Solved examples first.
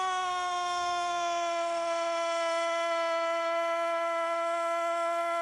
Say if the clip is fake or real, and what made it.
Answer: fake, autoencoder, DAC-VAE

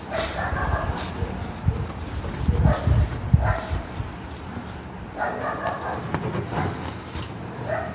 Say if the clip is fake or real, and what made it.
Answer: real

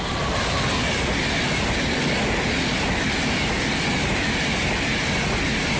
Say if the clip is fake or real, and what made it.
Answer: real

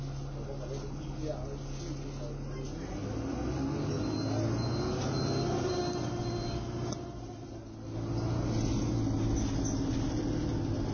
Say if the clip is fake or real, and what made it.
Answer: real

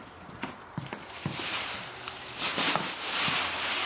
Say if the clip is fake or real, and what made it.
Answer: fake, vocoder, BigVGAN v2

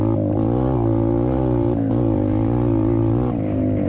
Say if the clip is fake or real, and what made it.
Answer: real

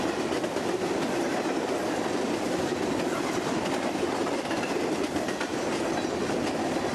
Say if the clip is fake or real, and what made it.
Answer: real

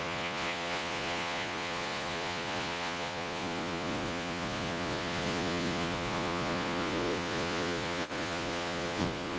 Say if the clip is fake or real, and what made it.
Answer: fake, vocoder, Vocos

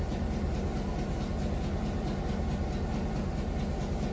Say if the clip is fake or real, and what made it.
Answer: real